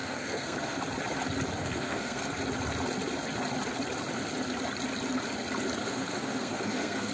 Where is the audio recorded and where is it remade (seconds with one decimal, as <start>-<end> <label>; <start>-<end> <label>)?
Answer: 0.0-0.8 remade; 0.8-1.6 recorded; 1.6-2.3 remade; 2.3-5.8 recorded; 5.8-7.1 remade